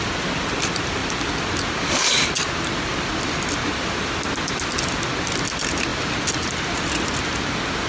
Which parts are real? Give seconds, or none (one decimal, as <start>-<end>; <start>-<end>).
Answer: 0.0-5.9; 6.6-7.9